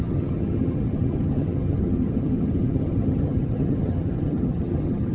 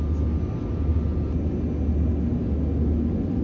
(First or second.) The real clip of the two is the second